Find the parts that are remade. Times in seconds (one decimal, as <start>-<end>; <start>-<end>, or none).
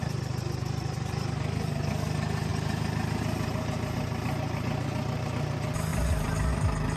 0.0-1.9; 5.9-6.5